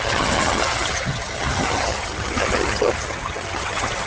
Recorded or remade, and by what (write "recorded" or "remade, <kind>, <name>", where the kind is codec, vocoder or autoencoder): remade, vocoder, HiFi-GAN